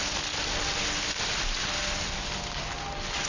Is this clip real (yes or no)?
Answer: yes